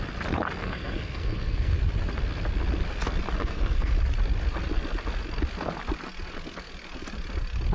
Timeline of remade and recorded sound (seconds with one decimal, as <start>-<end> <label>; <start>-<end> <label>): 0.0-0.6 recorded; 0.6-1.8 remade; 1.8-3.4 recorded; 3.4-3.9 remade; 3.9-7.7 recorded